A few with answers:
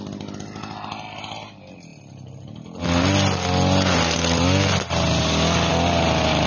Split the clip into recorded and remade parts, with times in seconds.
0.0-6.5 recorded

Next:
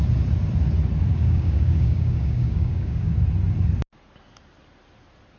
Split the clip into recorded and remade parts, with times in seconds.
0.0-1.1 recorded; 1.1-3.1 remade; 3.1-5.4 recorded

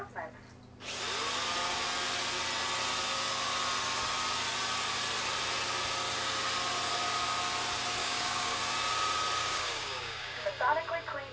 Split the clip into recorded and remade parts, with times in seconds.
0.0-8.0 recorded; 8.0-8.6 remade; 8.6-9.4 recorded; 9.4-10.5 remade; 10.5-11.3 recorded